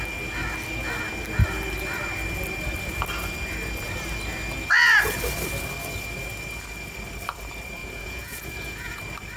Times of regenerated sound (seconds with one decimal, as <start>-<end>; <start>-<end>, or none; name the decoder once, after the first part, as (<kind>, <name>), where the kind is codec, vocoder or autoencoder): 7.8-9.0 (vocoder, Vocos)